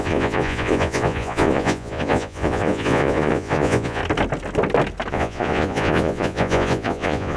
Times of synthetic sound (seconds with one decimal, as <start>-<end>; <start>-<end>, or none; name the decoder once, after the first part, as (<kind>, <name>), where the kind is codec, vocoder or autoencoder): 0.0-4.0 (vocoder, Vocos); 5.1-7.4

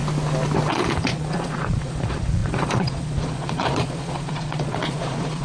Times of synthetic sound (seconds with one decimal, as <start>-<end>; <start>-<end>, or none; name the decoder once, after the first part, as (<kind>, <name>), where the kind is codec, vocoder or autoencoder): 0.7-5.4 (vocoder, Vocos)